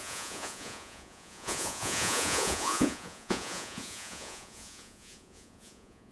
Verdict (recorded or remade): remade